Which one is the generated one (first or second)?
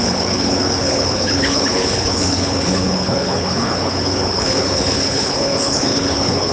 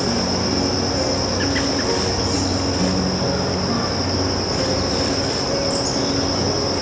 first